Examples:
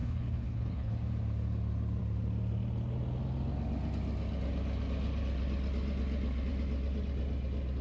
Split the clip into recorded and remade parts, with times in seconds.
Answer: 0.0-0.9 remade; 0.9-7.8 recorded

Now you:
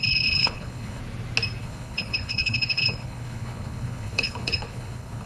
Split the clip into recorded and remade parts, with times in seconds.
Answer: 0.0-1.0 remade; 1.0-1.6 recorded; 1.6-5.3 remade

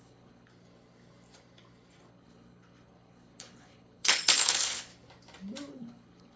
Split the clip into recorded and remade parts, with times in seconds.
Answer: 0.0-0.5 remade; 0.5-2.1 recorded; 2.1-4.9 remade; 4.9-5.7 recorded; 5.7-6.4 remade